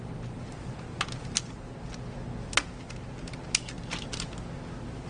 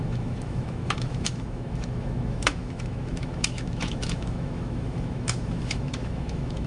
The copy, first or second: second